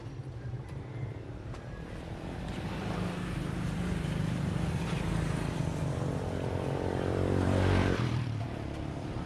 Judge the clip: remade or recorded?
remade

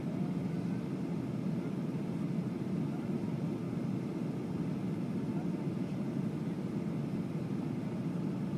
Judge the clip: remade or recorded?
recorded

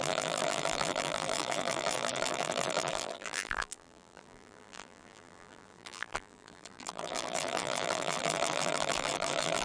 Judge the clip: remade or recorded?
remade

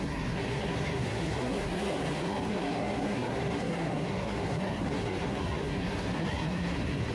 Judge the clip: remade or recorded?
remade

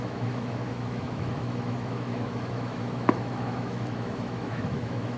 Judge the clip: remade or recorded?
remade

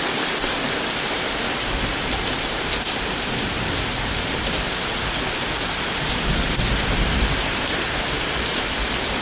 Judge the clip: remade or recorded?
remade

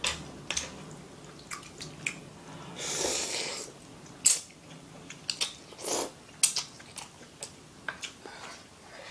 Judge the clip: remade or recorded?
recorded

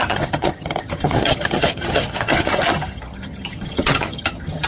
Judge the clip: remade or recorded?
remade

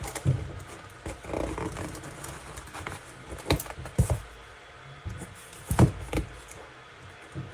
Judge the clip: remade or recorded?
recorded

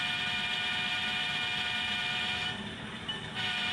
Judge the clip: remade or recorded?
remade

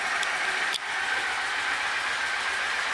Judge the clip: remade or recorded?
recorded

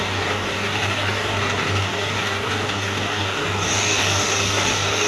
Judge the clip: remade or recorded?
remade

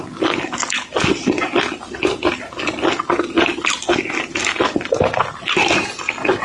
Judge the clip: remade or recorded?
recorded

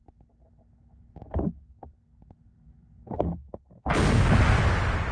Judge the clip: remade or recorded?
recorded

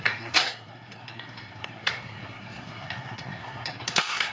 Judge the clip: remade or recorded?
remade